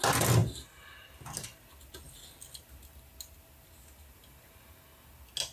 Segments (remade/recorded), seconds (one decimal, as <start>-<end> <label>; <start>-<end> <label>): 0.0-5.5 recorded

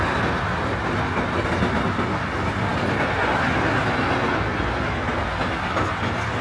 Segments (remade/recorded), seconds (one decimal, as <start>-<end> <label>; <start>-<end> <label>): 0.0-6.4 recorded